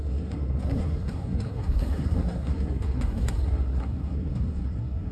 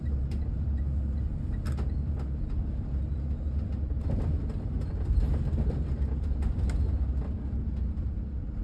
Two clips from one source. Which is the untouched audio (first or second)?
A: second